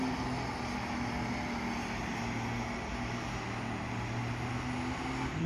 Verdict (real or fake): real